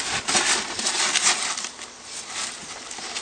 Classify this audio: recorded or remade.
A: recorded